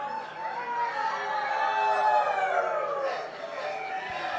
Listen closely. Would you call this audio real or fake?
real